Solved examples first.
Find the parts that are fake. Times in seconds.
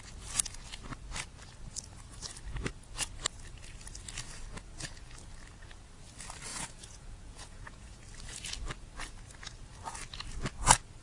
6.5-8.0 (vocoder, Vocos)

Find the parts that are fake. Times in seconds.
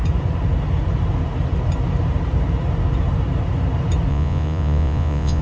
4.1-5.4 (vocoder, Vocos)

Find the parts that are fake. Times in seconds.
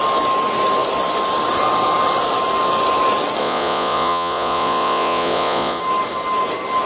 3.4-5.8 (vocoder, Vocos)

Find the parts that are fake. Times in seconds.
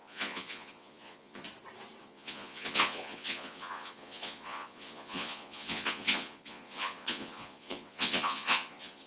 0.0-1.4 (vocoder, Vocos); 2.0-9.1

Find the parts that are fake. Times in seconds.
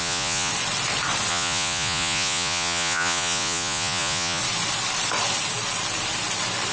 0.0-0.5 (vocoder, Vocos); 1.3-4.4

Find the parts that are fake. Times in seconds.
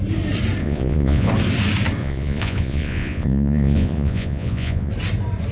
0.6-1.3 (vocoder, Vocos); 2.0-4.9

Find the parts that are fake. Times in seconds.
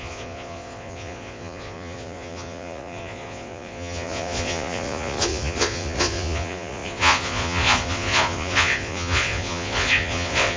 0.0-10.6 (vocoder, Vocos)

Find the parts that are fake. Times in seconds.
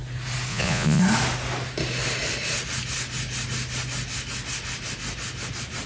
0.5-1.0 (vocoder, Vocos)